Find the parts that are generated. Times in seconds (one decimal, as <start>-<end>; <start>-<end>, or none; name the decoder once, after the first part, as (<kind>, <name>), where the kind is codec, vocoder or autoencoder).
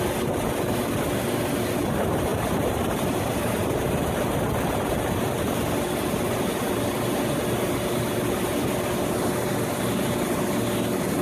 2.3-3.4 (vocoder, BigVGAN v2)